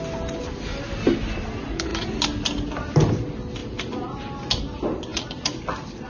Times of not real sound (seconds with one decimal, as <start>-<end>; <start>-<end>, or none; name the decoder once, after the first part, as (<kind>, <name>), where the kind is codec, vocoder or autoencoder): none